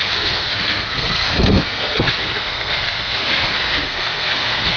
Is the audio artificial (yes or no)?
yes